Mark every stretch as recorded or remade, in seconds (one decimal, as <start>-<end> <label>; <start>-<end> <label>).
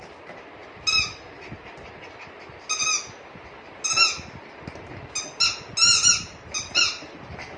0.0-7.6 recorded